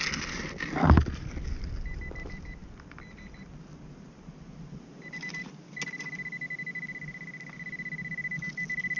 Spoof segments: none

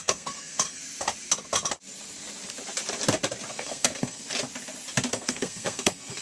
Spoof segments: 0.0-0.8 (codec, SNAC); 3.5-4.2; 5.1-6.2